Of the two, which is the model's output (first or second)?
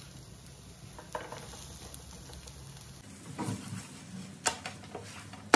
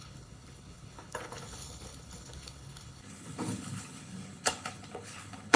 second